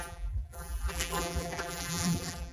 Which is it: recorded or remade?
remade